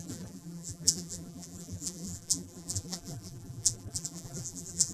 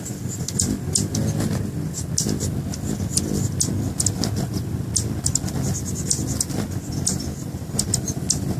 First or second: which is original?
second